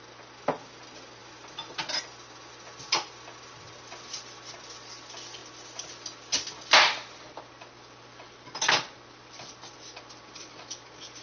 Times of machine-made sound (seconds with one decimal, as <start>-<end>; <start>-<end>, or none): none